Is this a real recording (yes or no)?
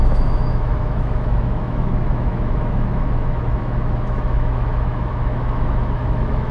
no